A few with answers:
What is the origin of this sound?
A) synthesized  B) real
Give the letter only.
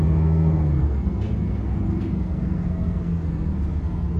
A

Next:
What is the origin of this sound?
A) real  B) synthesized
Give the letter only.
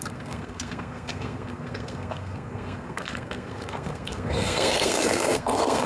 B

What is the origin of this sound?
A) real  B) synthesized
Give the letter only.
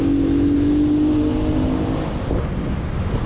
A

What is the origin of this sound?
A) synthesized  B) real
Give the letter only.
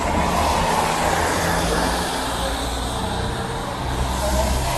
B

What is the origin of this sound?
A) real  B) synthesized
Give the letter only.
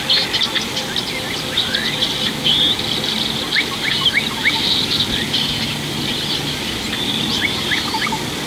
A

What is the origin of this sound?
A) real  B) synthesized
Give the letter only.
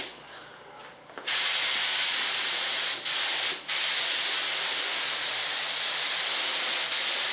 A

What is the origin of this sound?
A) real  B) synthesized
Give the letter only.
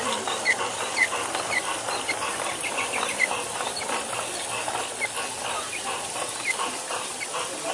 A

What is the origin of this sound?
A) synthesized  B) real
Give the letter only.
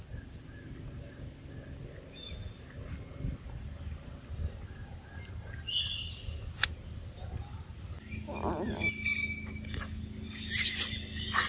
B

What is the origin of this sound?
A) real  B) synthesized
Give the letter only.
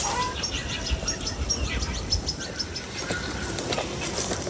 A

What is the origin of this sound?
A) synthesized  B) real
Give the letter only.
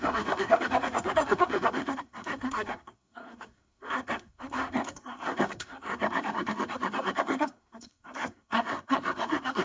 A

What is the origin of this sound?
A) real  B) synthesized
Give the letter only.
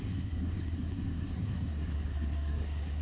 B